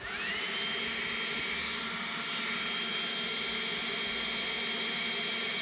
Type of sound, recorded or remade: recorded